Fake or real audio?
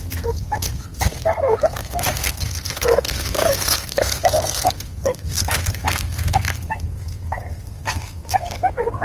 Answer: fake